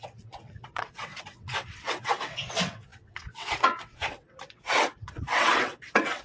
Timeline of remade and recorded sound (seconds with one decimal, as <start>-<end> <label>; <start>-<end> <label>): 0.0-6.2 remade